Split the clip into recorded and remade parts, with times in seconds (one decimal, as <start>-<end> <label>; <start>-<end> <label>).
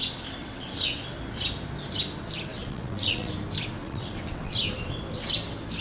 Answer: 0.0-0.4 recorded; 0.4-1.0 remade; 1.0-2.5 recorded; 2.5-3.3 remade; 3.3-3.8 recorded; 3.8-4.5 remade; 4.5-5.8 recorded